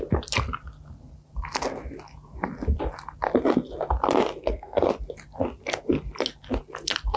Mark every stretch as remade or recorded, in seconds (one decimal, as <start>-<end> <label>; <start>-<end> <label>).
0.0-4.4 recorded; 4.4-4.9 remade; 4.9-7.2 recorded